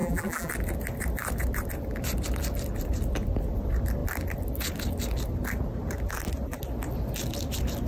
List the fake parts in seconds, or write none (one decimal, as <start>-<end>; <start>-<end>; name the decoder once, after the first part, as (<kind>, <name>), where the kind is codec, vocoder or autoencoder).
0.0-0.5 (vocoder, BigVGAN v2)

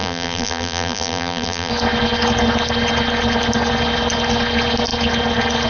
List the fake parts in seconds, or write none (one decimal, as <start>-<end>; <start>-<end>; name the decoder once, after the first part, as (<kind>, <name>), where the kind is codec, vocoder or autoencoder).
0.0-1.7 (vocoder, BigVGAN v2)

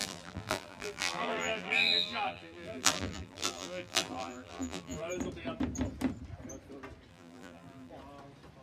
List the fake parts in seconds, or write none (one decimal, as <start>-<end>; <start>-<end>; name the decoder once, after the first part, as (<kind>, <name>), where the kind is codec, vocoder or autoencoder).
0.0-5.1 (vocoder, BigVGAN v2); 7.1-7.9

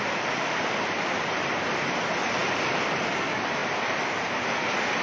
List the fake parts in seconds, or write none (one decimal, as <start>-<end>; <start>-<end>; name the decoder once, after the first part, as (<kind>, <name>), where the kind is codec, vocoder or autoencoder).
3.6-4.6 (vocoder, BigVGAN v2)